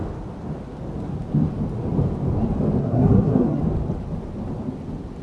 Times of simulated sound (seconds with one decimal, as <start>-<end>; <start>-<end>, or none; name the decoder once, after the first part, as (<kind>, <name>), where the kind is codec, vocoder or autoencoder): 2.8-3.6 (codec, SNAC)